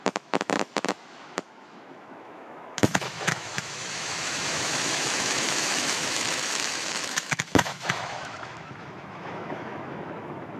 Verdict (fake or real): fake